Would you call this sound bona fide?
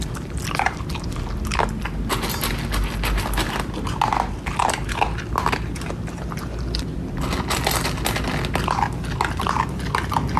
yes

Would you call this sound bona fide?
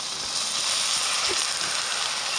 yes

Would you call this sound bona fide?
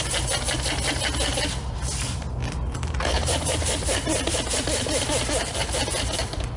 yes